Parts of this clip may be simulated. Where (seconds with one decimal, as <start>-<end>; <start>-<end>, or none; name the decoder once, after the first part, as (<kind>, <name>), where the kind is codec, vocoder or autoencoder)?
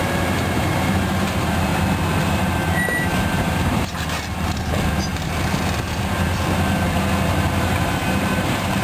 0.0-1.7 (vocoder, BigVGAN v2); 2.3-5.1; 7.3-8.8